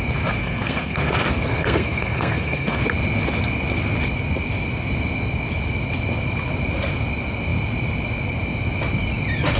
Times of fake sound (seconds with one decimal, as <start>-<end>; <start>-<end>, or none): 0.4-2.8